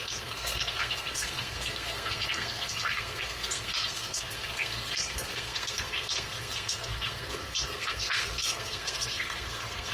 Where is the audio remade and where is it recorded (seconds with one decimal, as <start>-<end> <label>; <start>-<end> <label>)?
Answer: 0.0-9.9 remade